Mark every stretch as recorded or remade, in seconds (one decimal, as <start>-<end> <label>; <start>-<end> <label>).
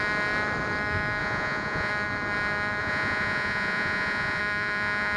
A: 0.0-1.2 recorded; 1.2-1.9 remade; 1.9-2.8 recorded; 2.8-4.4 remade; 4.4-5.2 recorded